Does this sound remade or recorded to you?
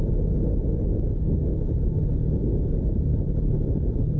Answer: recorded